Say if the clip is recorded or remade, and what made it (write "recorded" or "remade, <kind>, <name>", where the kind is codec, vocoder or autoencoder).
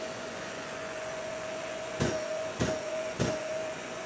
remade, vocoder, Vocos